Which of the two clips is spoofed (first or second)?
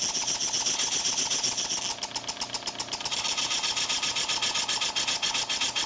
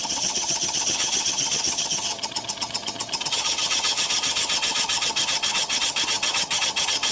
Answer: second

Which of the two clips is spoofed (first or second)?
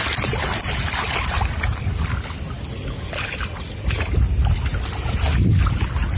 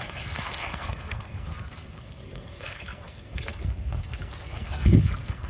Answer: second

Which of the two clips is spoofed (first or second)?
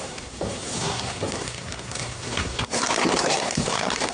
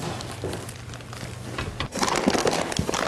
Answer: first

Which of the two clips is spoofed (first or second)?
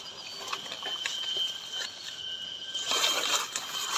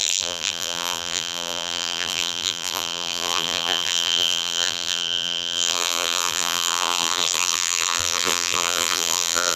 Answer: second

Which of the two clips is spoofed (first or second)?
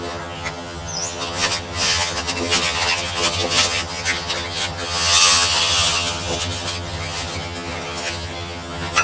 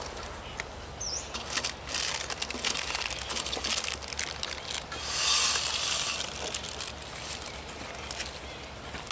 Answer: first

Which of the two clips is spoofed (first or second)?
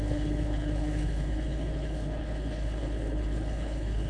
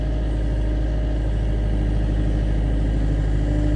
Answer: first